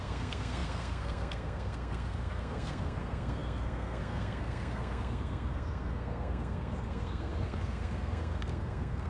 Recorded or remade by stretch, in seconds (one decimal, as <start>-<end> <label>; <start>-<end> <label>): 0.0-9.1 remade